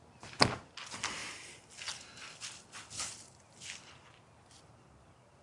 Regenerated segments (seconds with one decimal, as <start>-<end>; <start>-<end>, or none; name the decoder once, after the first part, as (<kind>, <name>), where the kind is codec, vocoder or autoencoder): none